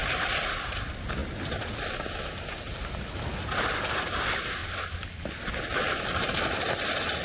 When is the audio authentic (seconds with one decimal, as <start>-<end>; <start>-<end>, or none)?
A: 0.7-4.6; 5.3-7.2